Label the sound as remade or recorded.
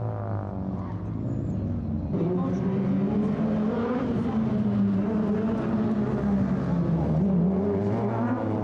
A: recorded